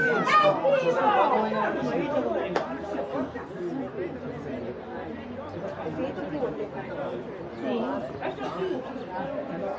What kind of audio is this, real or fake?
real